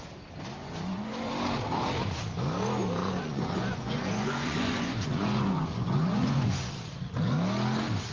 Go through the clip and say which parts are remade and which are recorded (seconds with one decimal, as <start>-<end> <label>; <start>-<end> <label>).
0.0-0.6 recorded; 0.6-1.3 remade; 1.3-3.0 recorded; 3.0-6.7 remade; 6.7-8.1 recorded